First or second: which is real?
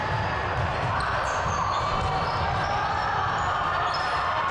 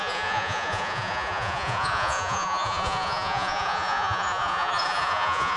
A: first